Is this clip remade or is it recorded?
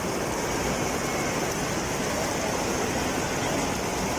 recorded